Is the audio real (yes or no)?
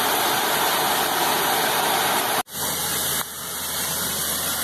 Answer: yes